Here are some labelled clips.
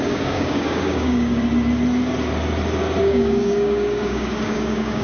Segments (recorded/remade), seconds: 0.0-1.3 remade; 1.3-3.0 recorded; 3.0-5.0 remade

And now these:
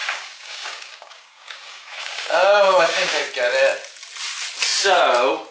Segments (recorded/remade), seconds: 0.0-3.3 remade; 3.3-5.5 recorded

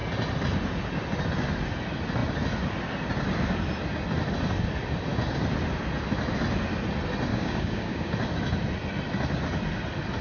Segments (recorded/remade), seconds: 0.0-7.3 recorded; 7.3-8.1 remade; 8.1-10.2 recorded

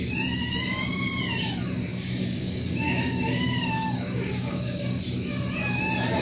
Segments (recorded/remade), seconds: 0.0-1.9 recorded; 1.9-5.0 remade; 5.0-6.2 recorded

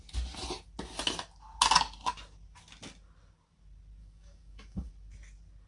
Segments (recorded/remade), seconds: 0.0-4.0 recorded; 4.0-4.9 remade; 4.9-5.7 recorded

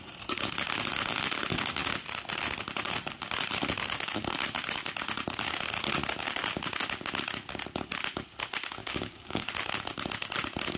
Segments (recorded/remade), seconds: 0.0-8.8 recorded; 8.8-9.5 remade; 9.5-10.8 recorded

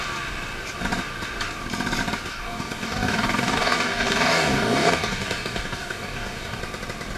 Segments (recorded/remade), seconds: 0.0-2.3 recorded; 2.3-6.6 remade; 6.6-7.2 recorded